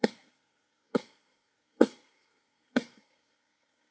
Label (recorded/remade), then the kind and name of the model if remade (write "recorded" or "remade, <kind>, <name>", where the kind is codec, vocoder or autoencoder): remade, codec, SNAC